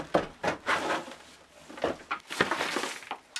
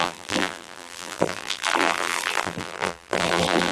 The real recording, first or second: first